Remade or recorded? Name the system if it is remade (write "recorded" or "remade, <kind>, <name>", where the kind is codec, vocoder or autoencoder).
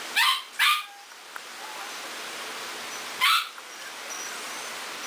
recorded